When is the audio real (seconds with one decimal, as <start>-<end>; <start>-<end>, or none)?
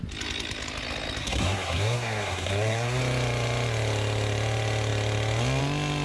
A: 0.0-1.2; 3.0-6.0